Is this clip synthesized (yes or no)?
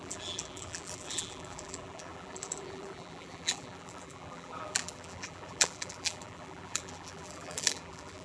yes